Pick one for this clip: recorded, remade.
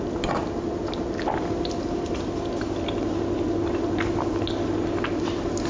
recorded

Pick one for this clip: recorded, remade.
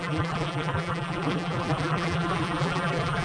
remade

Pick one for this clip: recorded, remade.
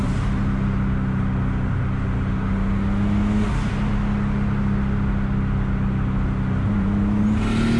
recorded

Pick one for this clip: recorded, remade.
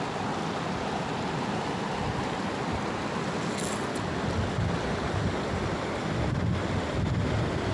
recorded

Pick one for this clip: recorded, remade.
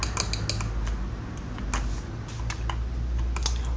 recorded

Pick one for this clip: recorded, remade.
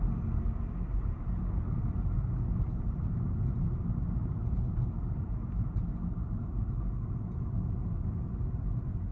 recorded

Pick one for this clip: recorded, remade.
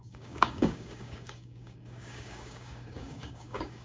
remade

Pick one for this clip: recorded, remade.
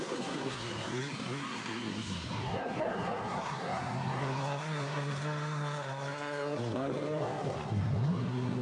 remade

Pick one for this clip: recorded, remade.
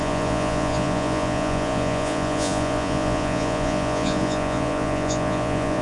remade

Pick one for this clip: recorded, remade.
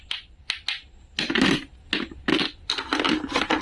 recorded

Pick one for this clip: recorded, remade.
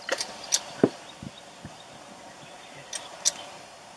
recorded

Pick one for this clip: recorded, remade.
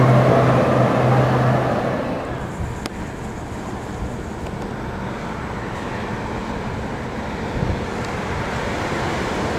recorded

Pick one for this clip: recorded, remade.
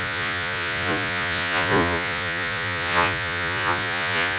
remade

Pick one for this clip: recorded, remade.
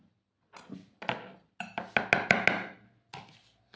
recorded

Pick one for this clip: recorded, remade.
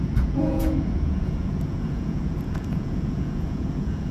remade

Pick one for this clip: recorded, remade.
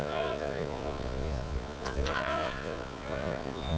remade